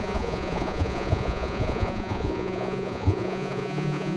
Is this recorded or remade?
remade